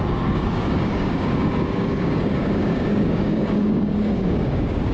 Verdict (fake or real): fake